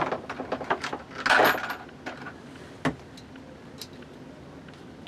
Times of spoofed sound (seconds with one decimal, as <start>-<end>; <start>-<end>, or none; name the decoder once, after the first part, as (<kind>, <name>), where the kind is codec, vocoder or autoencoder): none